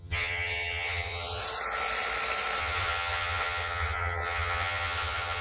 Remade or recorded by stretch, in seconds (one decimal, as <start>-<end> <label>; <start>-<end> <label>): 0.0-1.4 remade; 1.4-2.6 recorded; 2.6-5.4 remade